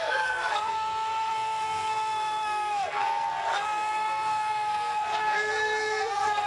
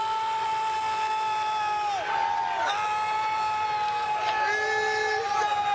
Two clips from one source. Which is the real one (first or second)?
second